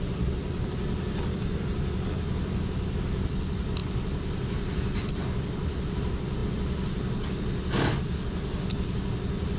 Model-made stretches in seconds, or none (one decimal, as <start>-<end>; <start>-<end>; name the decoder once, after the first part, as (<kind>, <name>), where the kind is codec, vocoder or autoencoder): none